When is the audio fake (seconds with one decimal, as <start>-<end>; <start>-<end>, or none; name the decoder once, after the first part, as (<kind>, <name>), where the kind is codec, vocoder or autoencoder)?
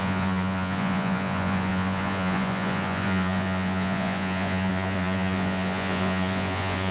0.0-6.9 (vocoder, Vocos)